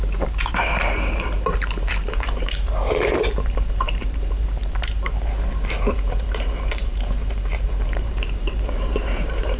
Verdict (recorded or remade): remade